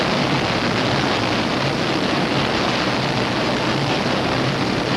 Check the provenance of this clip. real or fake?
real